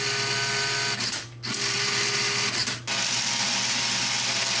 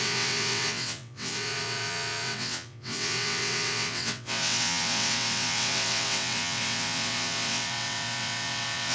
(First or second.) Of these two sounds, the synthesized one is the second